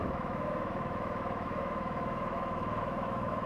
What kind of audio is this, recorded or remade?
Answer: remade